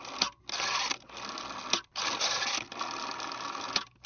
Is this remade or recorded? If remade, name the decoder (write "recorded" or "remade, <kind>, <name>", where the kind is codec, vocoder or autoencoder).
recorded